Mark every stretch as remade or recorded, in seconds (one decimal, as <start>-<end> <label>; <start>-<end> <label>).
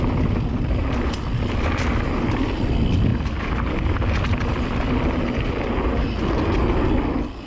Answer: 0.0-7.5 recorded